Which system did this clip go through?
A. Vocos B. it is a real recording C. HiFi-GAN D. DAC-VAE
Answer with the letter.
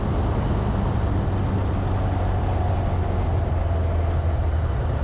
B